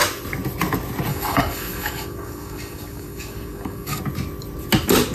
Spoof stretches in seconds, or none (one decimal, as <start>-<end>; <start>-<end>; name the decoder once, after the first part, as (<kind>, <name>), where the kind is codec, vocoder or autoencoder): 1.1-4.0 (codec, DAC)